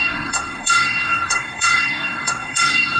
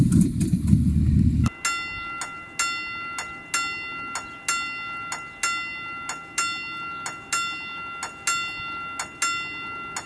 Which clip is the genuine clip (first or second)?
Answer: second